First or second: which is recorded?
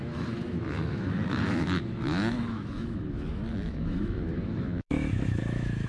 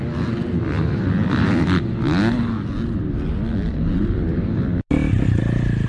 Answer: second